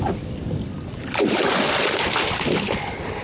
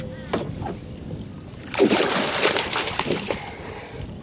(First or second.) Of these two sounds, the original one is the first